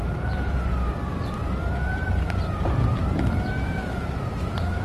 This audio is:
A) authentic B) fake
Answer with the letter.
B